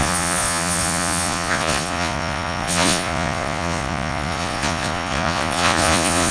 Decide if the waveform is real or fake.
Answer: fake